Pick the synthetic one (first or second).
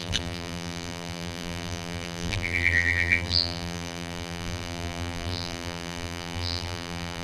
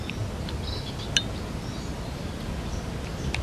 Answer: first